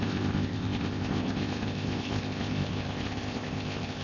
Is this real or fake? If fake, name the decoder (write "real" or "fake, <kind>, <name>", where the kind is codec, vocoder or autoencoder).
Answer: fake, codec, ZipCodec